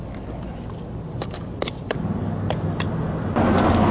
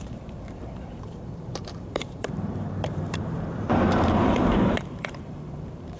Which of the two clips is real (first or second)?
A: first